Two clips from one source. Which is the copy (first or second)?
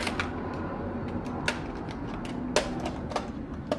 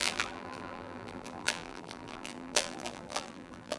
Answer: second